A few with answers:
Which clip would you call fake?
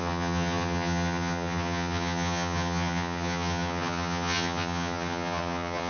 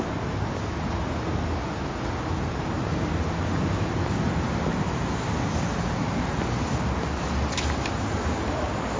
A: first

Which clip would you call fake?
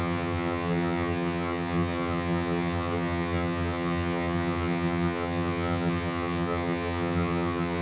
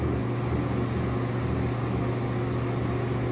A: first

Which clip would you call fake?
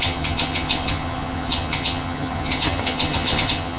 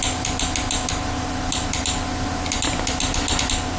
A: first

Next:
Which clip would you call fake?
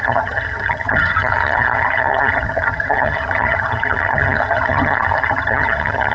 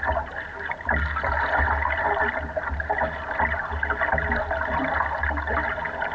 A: first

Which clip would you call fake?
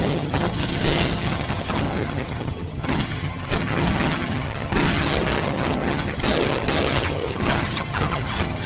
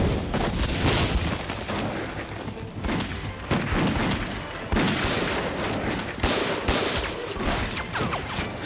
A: first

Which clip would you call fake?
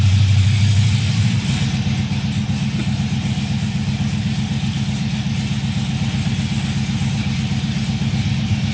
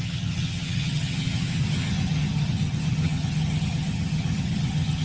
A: second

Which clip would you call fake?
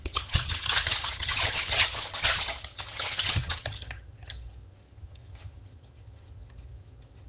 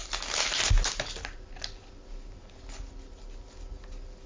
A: first